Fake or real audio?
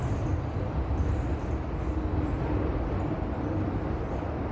real